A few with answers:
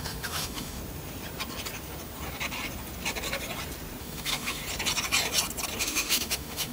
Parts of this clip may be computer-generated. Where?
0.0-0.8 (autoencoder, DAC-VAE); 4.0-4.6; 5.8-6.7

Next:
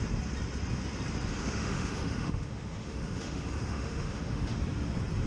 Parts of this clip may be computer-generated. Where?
1.3-4.5 (autoencoder, DAC-VAE)

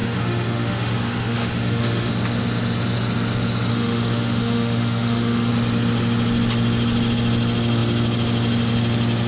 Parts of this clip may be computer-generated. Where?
0.0-2.1 (autoencoder, DAC-VAE); 3.7-5.5